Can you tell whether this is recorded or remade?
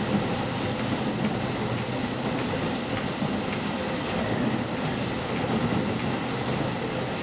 recorded